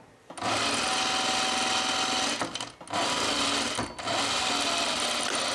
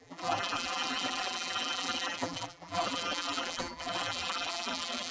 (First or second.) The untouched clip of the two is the first